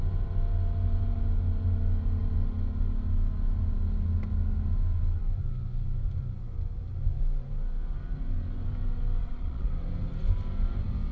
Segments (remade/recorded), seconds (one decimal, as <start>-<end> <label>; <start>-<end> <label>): 0.0-9.2 recorded; 9.2-9.7 remade; 9.7-11.1 recorded